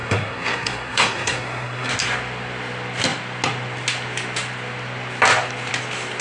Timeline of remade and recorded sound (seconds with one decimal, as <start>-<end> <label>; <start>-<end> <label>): 0.0-1.9 remade; 1.9-6.2 recorded